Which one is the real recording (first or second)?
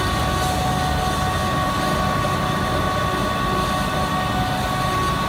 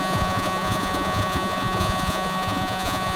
first